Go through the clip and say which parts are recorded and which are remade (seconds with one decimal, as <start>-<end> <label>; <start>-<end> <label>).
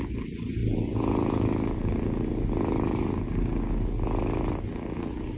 0.0-5.4 recorded